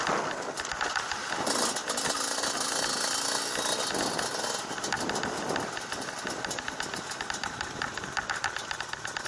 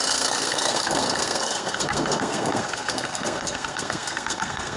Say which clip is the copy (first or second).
second